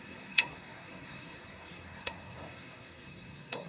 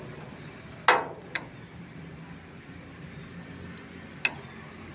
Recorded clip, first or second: second